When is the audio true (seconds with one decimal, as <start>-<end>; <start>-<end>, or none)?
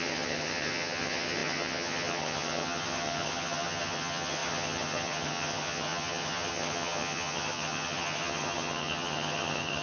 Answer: none